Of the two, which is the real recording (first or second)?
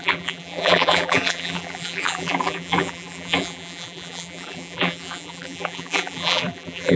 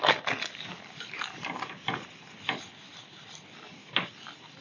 second